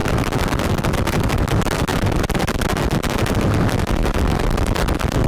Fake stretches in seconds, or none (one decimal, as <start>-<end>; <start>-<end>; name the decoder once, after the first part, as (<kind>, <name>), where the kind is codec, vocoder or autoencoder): none